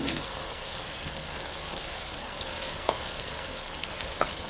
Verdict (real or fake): fake